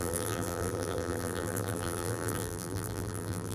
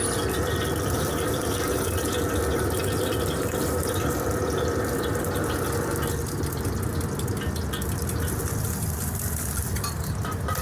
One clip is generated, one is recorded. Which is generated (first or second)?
first